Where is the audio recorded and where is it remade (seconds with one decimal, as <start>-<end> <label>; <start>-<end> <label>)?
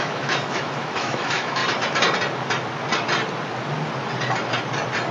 0.0-1.6 remade; 1.6-5.1 recorded